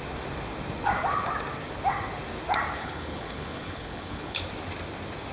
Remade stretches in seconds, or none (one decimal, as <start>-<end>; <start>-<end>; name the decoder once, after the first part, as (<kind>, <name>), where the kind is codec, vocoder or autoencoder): 2.8-4.4 (codec, HILCodec)